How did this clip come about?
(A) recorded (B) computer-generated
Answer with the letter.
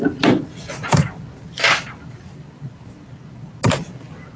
A